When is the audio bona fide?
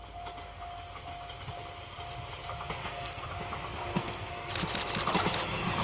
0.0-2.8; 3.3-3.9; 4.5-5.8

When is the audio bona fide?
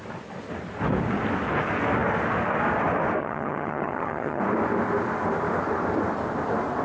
0.0-3.2; 4.4-6.8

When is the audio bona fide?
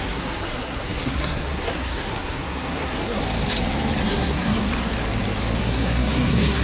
3.2-4.0; 4.7-5.6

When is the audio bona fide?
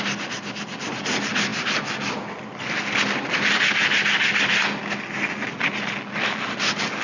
0.0-7.0